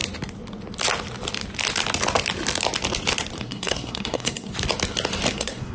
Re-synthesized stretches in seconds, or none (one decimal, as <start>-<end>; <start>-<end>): 3.4-4.5; 5.3-5.7